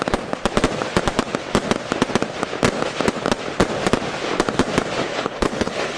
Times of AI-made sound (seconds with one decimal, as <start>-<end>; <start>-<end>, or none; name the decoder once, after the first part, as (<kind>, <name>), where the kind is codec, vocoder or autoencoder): 5.1-6.0 (codec, HILCodec)